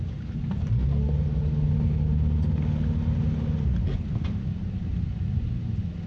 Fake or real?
real